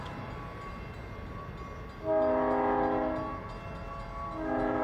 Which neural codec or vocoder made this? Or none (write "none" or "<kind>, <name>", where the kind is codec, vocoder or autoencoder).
none